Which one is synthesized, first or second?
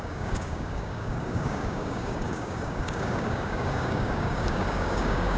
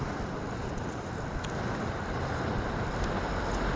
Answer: first